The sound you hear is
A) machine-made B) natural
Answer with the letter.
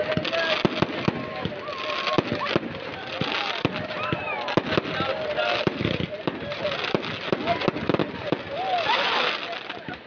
B